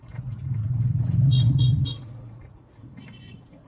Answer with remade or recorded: remade